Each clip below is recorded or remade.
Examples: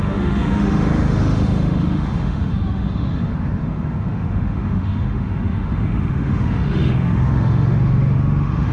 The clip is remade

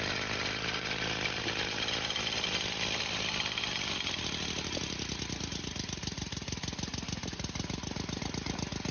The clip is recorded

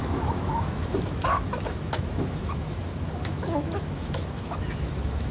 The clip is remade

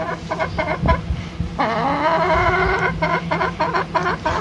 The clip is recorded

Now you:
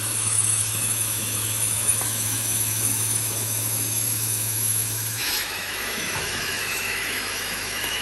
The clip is remade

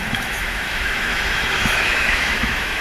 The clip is remade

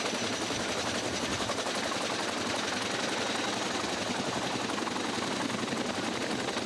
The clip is recorded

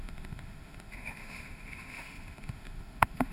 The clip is remade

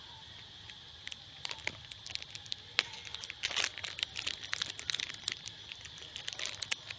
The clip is recorded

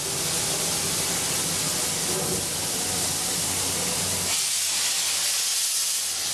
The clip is recorded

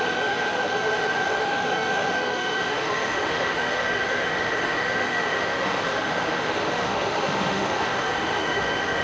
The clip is remade